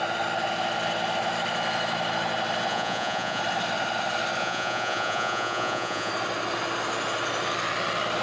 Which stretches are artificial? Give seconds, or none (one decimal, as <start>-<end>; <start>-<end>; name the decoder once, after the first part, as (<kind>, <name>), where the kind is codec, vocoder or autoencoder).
2.7-3.4 (vocoder, Vocos); 4.4-6.1